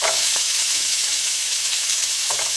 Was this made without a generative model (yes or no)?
no